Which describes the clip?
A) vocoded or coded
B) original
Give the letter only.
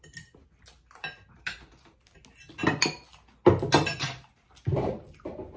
B